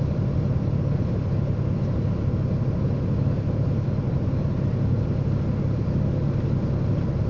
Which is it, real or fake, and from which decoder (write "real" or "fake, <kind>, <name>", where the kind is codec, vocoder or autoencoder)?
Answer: real